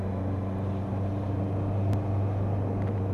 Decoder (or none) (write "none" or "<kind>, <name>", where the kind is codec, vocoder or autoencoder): none